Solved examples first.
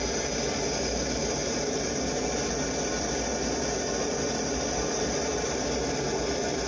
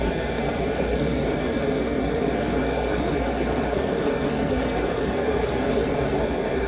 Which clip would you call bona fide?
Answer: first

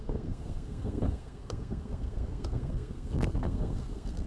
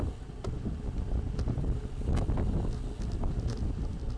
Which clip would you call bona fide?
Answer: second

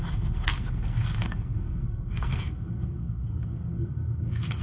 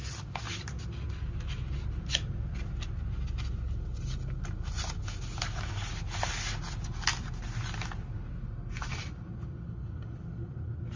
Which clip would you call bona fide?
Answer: second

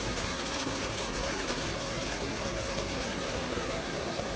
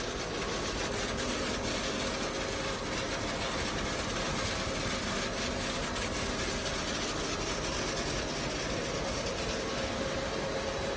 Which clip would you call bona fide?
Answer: second